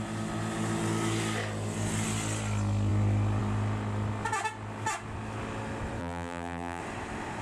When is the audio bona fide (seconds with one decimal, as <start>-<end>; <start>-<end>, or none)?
0.0-6.0; 6.8-7.4